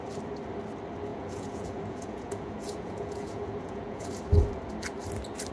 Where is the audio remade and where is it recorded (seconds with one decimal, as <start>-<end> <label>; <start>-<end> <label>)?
0.0-1.1 recorded; 1.1-4.1 remade; 4.1-5.5 recorded